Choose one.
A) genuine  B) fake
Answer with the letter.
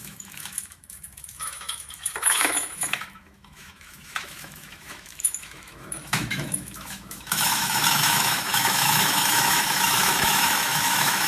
B